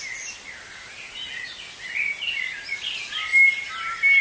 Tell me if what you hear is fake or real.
real